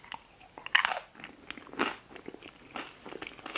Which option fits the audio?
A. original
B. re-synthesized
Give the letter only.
A